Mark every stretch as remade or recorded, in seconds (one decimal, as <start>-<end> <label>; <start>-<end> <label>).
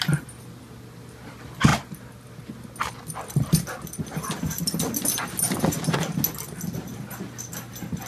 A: 0.0-8.1 recorded